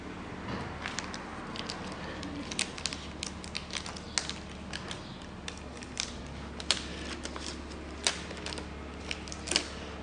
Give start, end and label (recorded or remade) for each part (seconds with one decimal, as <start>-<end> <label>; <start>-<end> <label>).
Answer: 0.0-10.0 recorded